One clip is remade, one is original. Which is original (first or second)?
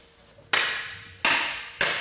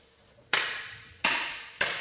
first